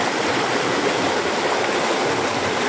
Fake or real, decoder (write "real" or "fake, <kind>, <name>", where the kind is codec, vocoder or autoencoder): real